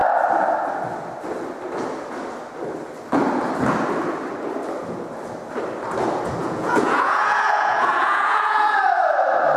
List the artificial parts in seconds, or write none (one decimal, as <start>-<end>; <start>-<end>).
6.4-8.8